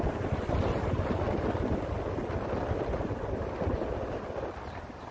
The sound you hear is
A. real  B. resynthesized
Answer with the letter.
A